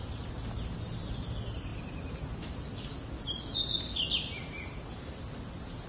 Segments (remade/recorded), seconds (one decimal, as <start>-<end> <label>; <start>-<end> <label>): 0.0-5.9 recorded